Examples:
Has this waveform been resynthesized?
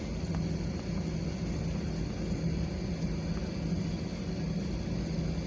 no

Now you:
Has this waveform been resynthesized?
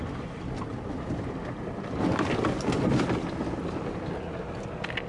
no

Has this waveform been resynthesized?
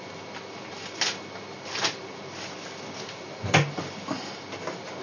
no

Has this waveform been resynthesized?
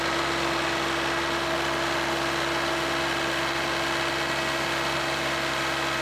no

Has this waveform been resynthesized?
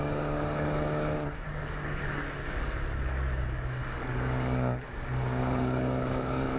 yes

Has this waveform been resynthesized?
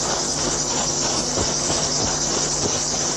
yes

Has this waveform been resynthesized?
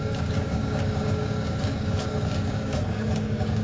yes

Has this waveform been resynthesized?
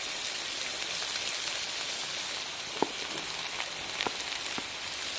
no